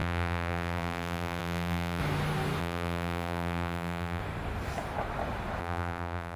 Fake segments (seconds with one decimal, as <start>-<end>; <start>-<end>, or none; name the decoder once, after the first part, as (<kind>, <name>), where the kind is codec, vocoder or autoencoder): 0.0-2.0 (vocoder, BigVGAN v2); 2.6-4.2; 5.6-6.4